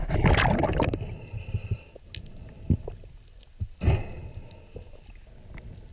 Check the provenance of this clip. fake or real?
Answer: real